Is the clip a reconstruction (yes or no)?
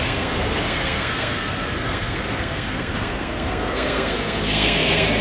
yes